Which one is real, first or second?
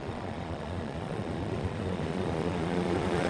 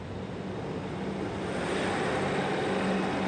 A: second